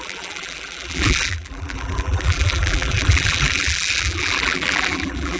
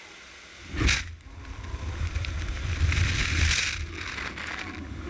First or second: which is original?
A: second